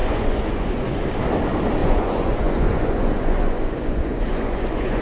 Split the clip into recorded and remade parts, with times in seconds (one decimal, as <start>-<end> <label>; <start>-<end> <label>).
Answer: 0.0-1.0 remade; 1.0-1.8 recorded; 1.8-5.0 remade